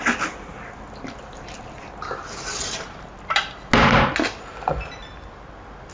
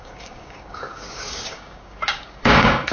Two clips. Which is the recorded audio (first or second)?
first